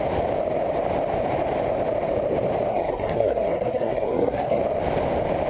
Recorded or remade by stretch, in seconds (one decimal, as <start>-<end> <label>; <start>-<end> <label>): 0.0-2.7 recorded; 2.7-4.6 remade; 4.6-5.5 recorded